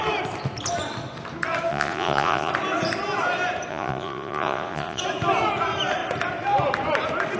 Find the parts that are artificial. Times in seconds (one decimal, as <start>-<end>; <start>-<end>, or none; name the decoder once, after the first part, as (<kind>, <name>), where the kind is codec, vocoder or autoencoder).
1.7-2.5 (vocoder, Vocos); 3.7-5.0